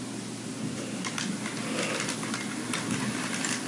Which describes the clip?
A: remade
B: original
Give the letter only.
B